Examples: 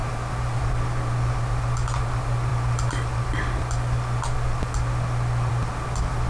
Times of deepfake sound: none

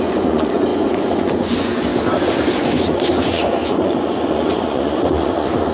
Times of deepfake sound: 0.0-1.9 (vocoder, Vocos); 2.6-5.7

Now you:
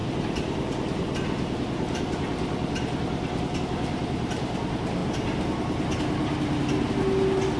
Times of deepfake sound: none

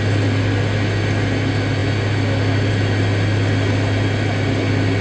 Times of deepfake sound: none

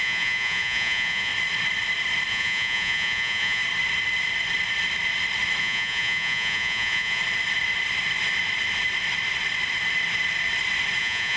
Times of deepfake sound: 0.0-1.3 (vocoder, Vocos); 2.3-3.6; 5.6-7.2; 11.0-11.4

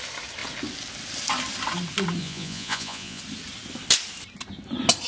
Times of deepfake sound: 2.2-3.2 (vocoder, Vocos)

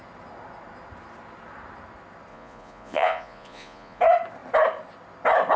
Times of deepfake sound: 2.3-4.0 (vocoder, Vocos)

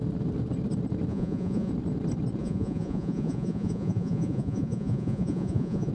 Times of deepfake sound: 1.1-1.7 (vocoder, Vocos); 2.4-5.9